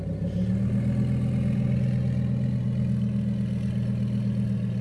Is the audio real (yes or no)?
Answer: yes